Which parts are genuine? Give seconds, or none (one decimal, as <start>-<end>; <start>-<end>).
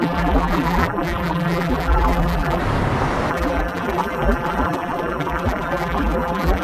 2.6-3.3